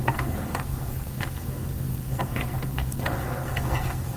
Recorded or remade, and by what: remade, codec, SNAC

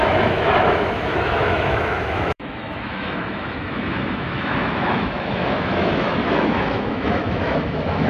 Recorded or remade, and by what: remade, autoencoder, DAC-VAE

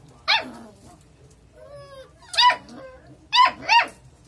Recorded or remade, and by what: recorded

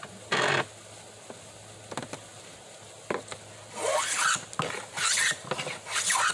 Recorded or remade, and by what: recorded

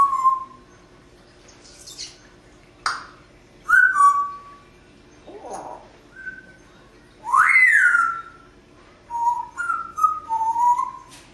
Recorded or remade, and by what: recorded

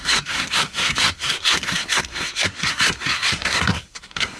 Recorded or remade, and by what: remade, codec, SNAC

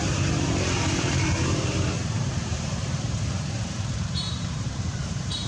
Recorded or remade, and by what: remade, vocoder, BigVGAN v2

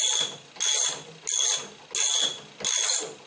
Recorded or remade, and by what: recorded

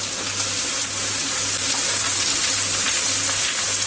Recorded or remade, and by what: recorded